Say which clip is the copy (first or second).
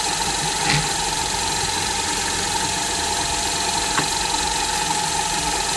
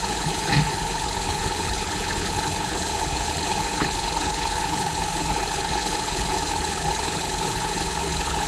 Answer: second